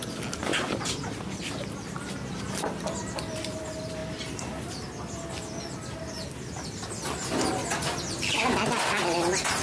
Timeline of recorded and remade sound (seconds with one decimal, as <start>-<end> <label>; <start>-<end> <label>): 0.0-9.6 recorded